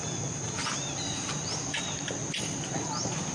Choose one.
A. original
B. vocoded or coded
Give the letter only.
A